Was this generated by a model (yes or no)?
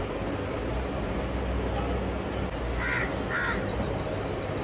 no